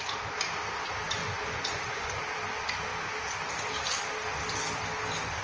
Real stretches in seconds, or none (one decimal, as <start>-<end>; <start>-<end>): 0.0-1.2; 2.2-5.4